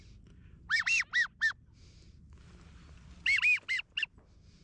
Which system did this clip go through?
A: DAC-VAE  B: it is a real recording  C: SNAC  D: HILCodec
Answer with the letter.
B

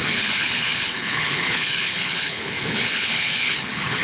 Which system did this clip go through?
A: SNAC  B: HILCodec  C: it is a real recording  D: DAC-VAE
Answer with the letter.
B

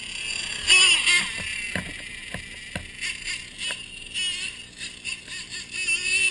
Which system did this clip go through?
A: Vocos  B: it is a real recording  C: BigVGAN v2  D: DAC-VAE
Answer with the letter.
B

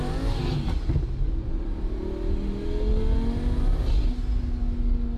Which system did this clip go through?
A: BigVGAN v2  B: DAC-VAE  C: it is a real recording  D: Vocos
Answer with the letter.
C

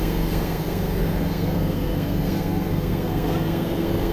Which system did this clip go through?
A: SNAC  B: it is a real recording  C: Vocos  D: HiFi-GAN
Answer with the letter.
A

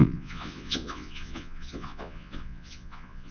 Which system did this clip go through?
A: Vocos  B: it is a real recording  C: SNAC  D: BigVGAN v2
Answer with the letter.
A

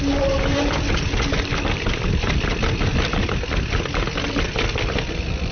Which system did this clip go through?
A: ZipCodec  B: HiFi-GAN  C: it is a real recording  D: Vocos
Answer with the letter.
C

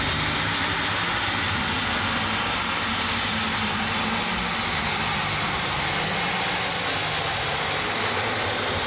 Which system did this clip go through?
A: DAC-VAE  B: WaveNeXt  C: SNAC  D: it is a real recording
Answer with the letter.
D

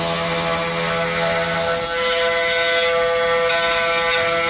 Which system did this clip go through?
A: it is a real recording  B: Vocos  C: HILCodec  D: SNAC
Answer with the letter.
A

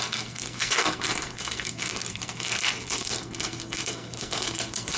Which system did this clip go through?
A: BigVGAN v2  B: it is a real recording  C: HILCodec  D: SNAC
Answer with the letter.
D